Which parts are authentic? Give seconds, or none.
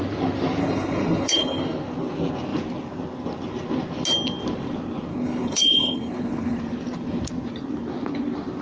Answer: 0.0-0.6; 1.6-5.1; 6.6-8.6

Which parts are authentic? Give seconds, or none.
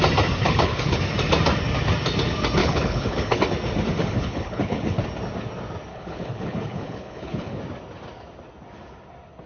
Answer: 0.0-0.4; 1.0-2.6; 3.4-4.0; 5.0-5.9; 7.6-9.5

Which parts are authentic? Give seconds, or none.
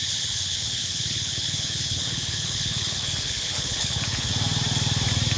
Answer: 4.3-5.4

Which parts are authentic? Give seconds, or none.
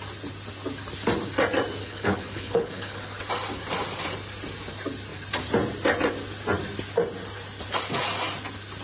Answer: 0.0-1.8; 3.2-8.8